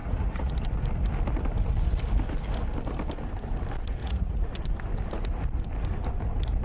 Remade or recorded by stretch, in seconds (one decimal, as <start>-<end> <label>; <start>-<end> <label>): 0.0-0.5 remade; 0.5-4.0 recorded; 4.0-4.5 remade; 4.5-6.6 recorded